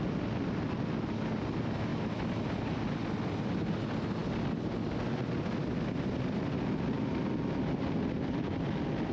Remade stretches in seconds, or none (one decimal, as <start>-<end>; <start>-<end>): none